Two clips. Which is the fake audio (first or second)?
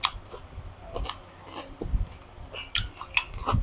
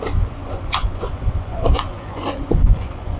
second